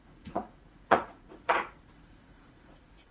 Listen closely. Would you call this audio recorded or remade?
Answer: remade